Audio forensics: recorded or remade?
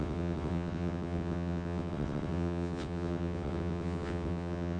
remade